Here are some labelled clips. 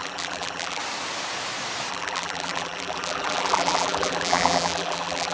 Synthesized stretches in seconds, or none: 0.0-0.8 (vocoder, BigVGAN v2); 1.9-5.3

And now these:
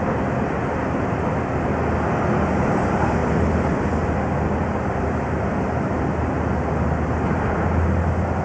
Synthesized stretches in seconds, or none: none

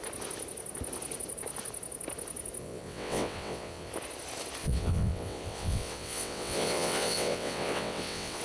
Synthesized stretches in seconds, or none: 2.6-3.9 (vocoder, WaveNeXt); 4.6-8.4

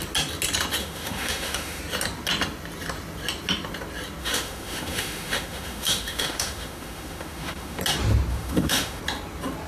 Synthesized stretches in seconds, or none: 0.8-1.8 (autoencoder, DAC-VAE); 4.2-7.8; 8.3-9.0